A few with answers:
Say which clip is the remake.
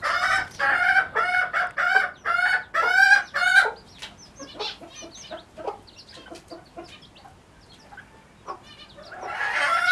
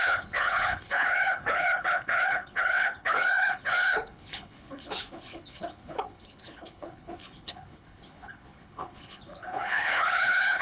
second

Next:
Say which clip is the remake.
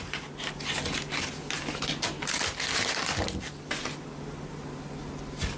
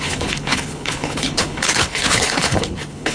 second